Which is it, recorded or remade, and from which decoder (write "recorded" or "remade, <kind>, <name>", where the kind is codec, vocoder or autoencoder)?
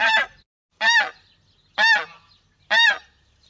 recorded